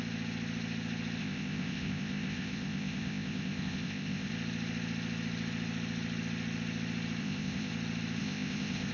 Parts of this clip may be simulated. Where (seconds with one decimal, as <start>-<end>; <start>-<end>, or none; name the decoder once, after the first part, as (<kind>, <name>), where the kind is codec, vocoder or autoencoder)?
1.2-4.3 (codec, ZipCodec); 7.2-7.7; 8.2-8.9